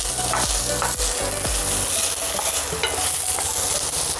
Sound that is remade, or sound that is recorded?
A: recorded